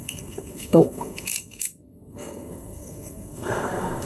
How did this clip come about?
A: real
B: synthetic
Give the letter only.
B